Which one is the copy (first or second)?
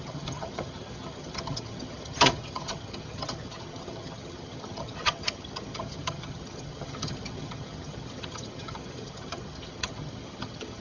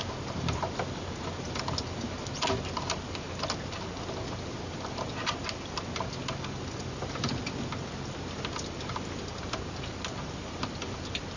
first